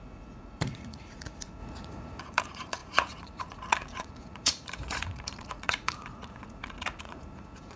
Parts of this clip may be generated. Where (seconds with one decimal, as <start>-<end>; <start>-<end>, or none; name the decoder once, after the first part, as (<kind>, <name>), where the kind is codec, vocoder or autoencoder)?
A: 0.0-7.8 (vocoder, Vocos)